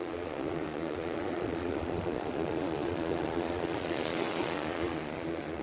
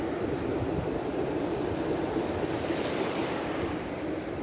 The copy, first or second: first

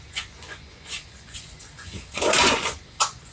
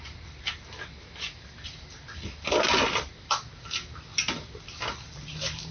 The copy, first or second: first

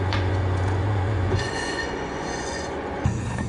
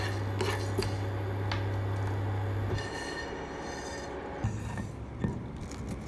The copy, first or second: first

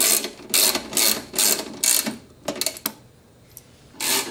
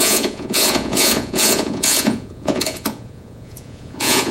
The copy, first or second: second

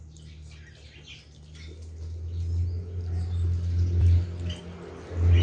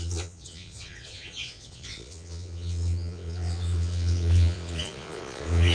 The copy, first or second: second